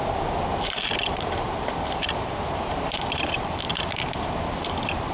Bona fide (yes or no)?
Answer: no